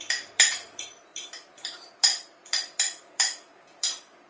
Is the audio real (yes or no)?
no